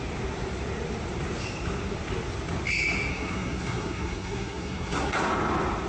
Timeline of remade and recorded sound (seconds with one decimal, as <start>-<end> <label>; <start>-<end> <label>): 0.0-3.1 recorded; 3.1-5.1 remade; 5.1-5.9 recorded